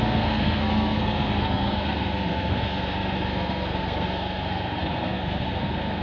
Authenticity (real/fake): fake